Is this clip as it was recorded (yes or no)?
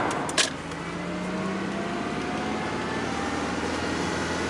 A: yes